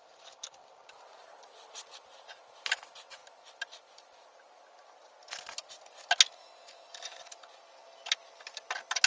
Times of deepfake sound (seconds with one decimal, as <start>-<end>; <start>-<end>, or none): none